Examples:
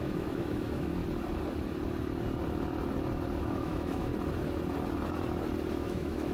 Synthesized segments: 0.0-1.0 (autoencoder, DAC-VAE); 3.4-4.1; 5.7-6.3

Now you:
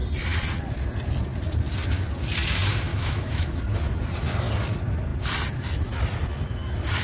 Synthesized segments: 2.9-3.6 (autoencoder, DAC-VAE)